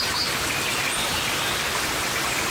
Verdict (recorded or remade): recorded